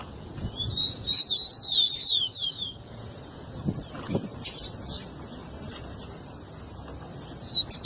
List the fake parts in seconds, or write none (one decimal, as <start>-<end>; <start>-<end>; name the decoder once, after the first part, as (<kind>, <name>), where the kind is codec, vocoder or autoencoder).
0.0-3.6 (vocoder, Vocos)